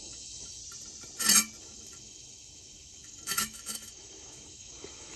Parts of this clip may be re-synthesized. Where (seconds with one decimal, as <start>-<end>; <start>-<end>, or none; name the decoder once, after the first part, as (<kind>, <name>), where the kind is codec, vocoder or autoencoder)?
0.0-0.6 (autoencoder, DAC-VAE); 1.6-5.2